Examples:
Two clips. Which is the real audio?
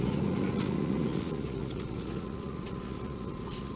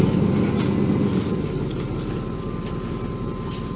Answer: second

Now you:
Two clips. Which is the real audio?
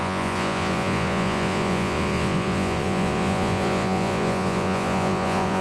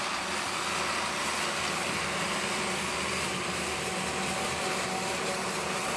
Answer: second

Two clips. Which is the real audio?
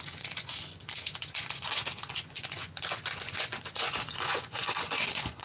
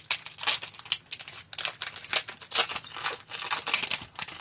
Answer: second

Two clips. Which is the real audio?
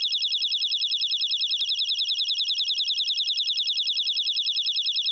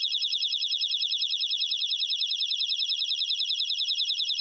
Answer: first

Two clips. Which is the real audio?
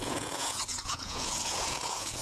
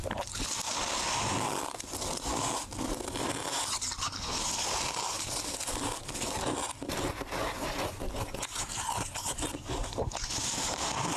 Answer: second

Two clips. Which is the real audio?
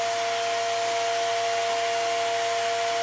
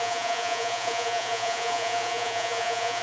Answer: first